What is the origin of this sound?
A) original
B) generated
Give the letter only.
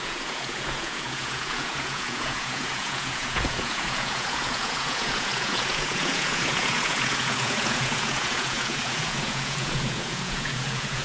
B